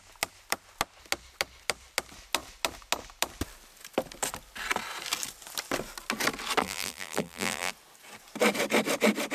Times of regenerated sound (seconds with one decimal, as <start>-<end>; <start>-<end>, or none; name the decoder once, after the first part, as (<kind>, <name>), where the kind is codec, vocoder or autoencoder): 6.6-7.7 (vocoder, BigVGAN v2)